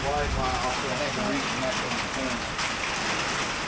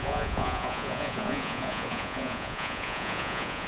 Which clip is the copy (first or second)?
second